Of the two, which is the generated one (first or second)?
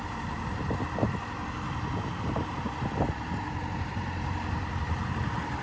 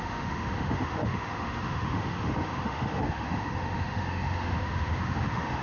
second